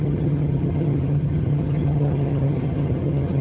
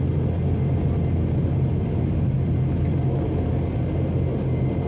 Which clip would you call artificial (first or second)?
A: first